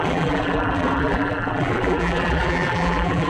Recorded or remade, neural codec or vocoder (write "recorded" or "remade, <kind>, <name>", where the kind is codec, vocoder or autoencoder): remade, vocoder, BigVGAN v2